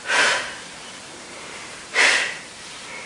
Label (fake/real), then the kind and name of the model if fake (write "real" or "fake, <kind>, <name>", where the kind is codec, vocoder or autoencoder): fake, vocoder, BigVGAN v2